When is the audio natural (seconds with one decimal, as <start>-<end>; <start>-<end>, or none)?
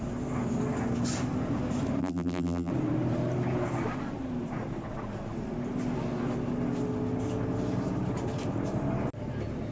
0.0-2.0; 2.7-9.7